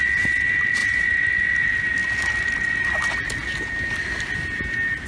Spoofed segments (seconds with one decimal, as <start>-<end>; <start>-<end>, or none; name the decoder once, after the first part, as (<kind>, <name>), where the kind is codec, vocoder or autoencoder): none